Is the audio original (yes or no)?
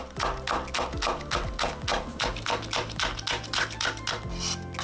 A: yes